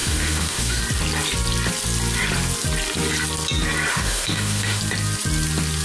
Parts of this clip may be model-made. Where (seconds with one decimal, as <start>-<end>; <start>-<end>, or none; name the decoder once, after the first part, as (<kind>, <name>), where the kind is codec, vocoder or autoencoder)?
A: 0.0-0.8 (autoencoder, DAC-VAE); 3.9-4.8